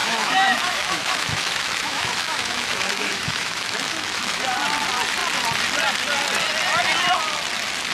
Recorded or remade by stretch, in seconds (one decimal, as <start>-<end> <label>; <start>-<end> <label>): 0.0-4.4 remade; 4.4-7.9 recorded

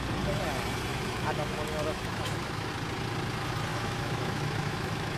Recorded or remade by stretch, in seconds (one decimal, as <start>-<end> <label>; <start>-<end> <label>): 0.0-0.9 recorded; 0.9-2.7 remade; 2.7-3.7 recorded; 3.7-5.2 remade

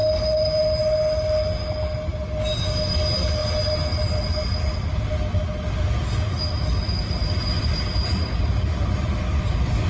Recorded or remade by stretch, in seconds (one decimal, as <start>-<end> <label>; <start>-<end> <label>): 0.0-9.9 recorded

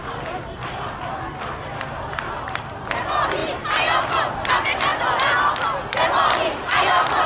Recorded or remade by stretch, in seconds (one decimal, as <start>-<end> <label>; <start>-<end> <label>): 0.0-4.9 remade; 4.9-5.9 recorded; 5.9-7.3 remade